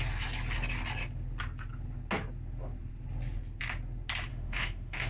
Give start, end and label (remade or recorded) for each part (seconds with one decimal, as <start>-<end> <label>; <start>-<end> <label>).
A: 0.0-4.3 recorded; 4.3-5.1 remade